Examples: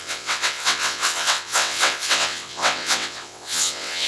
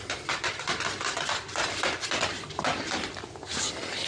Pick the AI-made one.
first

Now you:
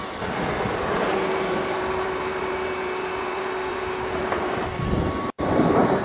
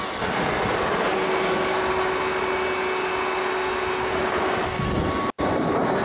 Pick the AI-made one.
first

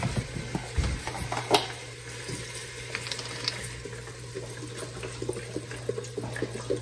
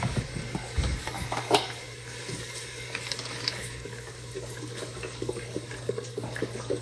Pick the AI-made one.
second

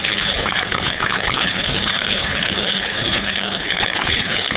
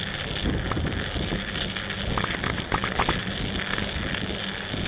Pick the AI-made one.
first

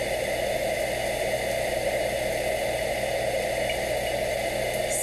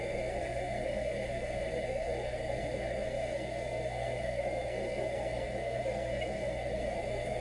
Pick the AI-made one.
second